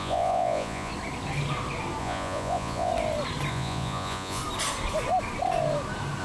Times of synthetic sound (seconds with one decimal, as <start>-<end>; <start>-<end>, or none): 0.0-0.9; 2.0-2.9; 3.5-4.4

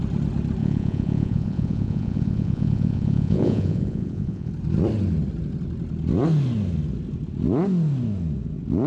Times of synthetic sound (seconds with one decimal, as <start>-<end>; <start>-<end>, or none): 0.6-4.5